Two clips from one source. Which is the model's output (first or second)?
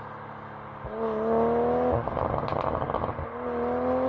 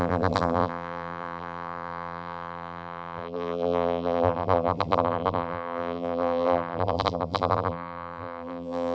second